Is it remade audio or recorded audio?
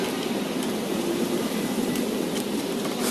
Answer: recorded